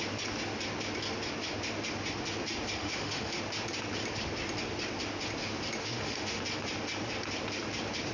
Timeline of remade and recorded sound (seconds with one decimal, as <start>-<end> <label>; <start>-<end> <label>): 0.0-2.8 recorded; 2.8-3.4 remade; 3.4-5.8 recorded; 5.8-6.4 remade; 6.4-8.1 recorded